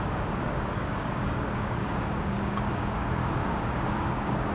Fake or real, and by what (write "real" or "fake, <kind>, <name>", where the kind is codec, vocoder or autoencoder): fake, codec, DAC